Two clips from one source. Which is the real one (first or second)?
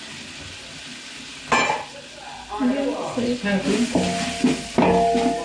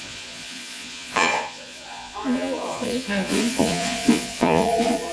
first